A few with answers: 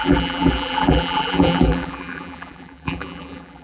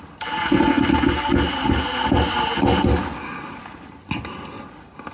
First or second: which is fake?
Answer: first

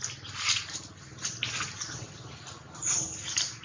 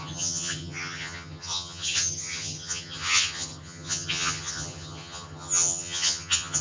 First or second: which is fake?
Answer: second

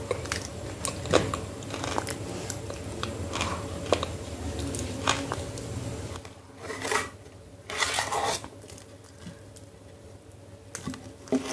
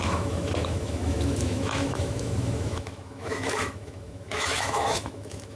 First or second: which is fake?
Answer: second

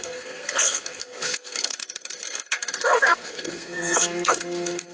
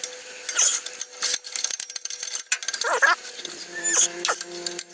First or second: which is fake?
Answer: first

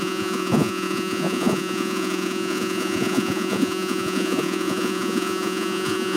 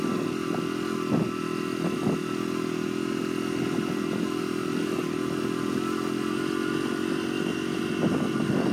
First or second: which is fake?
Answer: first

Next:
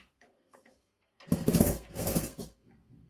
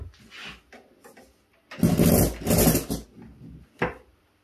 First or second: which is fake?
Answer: first